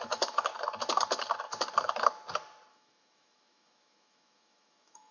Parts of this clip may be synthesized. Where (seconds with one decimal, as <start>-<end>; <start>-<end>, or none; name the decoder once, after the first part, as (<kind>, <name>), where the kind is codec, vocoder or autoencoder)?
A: 0.0-0.5 (autoencoder, DAC-VAE); 2.7-5.1